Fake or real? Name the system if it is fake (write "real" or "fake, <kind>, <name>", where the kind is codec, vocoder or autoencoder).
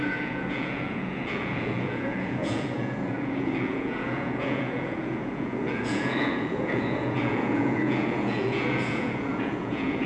fake, vocoder, Vocos